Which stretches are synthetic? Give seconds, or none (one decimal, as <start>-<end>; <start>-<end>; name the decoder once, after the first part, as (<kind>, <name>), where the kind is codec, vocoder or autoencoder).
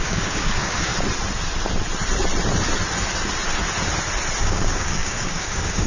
0.0-0.9 (codec, DAC); 4.4-5.9